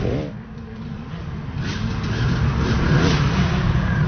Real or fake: real